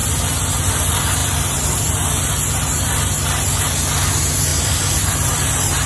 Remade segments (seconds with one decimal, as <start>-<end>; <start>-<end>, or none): 1.2-2.3; 4.5-5.9